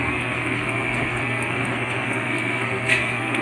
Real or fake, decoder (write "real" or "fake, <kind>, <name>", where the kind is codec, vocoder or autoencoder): fake, codec, SNAC